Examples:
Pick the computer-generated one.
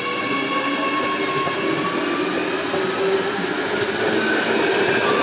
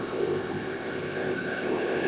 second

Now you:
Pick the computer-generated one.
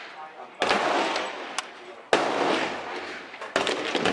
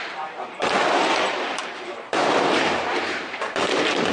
second